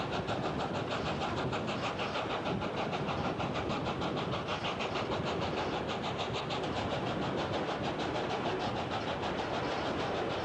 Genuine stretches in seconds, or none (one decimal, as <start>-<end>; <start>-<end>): 0.0-10.4

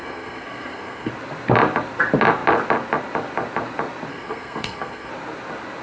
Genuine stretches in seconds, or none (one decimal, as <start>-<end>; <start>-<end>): 1.1-4.1; 5.1-5.8